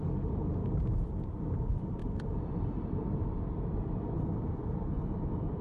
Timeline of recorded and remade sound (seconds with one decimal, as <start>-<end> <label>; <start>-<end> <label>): 0.0-0.6 recorded; 0.6-1.5 remade; 1.5-2.0 recorded; 2.0-4.6 remade; 4.6-5.6 recorded